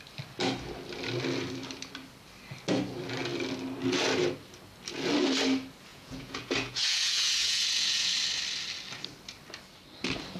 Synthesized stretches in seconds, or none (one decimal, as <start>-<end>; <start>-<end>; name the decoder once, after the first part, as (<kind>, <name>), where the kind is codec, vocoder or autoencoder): 5.9-8.1 (vocoder, Vocos)